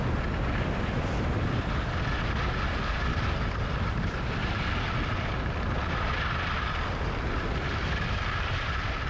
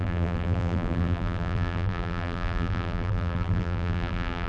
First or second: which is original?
first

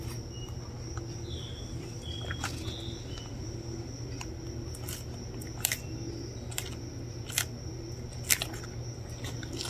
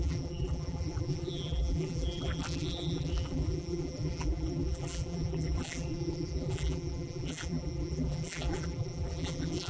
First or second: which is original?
first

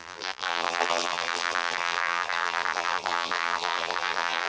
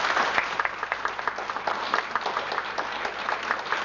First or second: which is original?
second